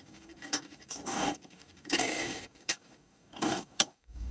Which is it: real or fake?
fake